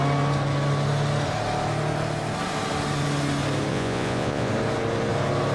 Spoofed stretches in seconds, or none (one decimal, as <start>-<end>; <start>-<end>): 3.7-4.5